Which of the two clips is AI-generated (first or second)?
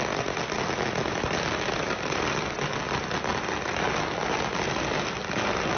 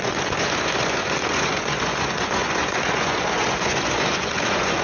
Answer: second